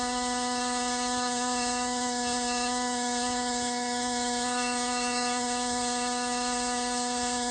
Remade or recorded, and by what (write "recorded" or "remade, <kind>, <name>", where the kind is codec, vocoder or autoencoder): remade, autoencoder, DAC-VAE